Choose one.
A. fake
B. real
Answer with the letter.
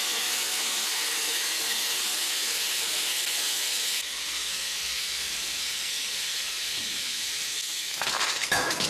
A